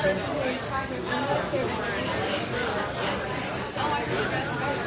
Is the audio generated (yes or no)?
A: no